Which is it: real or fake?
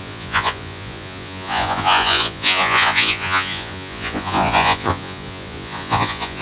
fake